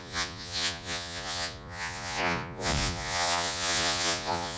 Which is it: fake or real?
fake